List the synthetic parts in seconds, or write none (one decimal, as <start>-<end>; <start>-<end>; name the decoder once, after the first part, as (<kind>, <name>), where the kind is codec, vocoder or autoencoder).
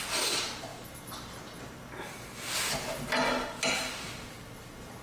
none